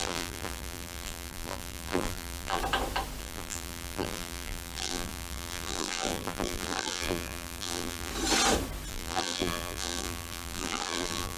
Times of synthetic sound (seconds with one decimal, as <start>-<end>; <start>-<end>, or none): 0.0-2.6; 3.2-8.1; 8.9-11.4